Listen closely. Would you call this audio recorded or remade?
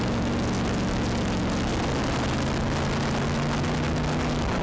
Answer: recorded